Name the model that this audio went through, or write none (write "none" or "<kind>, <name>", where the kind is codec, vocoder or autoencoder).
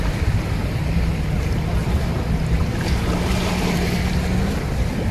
none